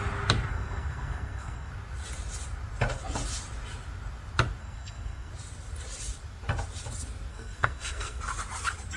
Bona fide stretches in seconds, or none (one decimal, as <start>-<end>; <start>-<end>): 0.0-0.5; 1.7-4.6; 5.3-7.3; 8.2-9.0